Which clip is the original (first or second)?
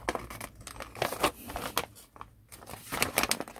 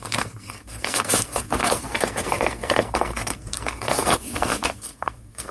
first